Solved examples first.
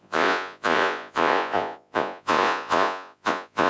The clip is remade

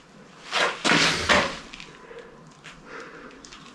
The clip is recorded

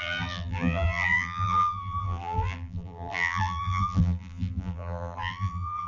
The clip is remade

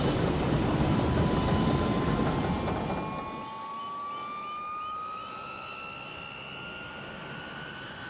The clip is recorded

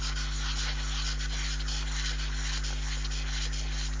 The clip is recorded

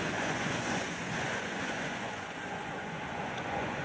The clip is remade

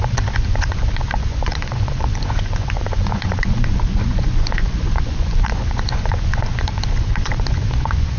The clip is remade